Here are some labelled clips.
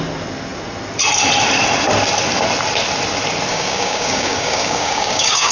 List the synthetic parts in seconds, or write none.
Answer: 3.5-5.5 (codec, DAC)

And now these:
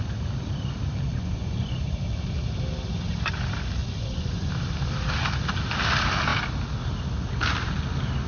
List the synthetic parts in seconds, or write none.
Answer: 1.1-1.8 (vocoder, Vocos); 3.8-4.5

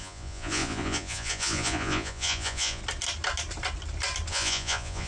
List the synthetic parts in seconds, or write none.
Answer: 0.0-2.8 (vocoder, Vocos); 4.3-5.1

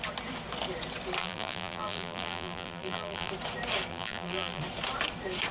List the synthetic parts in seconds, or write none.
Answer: 1.2-3.3 (vocoder, BigVGAN v2); 3.9-4.6

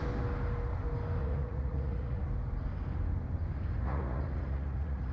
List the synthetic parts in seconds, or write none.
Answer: 1.2-2.2 (vocoder, Vocos); 3.8-5.1

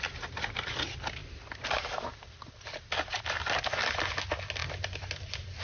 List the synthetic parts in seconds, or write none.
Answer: none

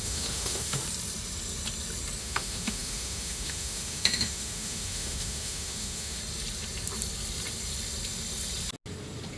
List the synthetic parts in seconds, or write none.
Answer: 0.0-0.8 (autoencoder, DAC-VAE); 2.2-6.2

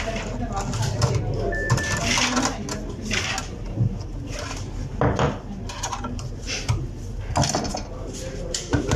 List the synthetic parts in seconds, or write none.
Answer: 7.7-9.0 (vocoder, BigVGAN v2)